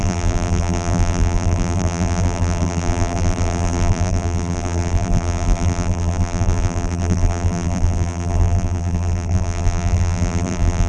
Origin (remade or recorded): remade